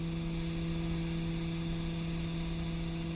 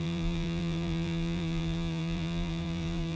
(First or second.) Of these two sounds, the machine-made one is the second